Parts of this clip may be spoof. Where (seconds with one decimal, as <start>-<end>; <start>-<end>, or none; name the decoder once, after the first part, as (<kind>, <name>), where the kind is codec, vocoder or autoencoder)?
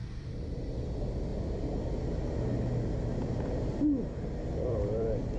0.0-1.3 (vocoder, BigVGAN v2); 4.5-5.4